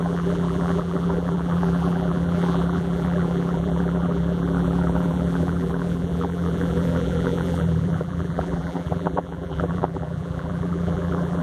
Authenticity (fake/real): fake